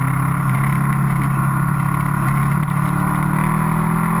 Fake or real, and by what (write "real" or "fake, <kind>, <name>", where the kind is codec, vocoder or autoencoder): real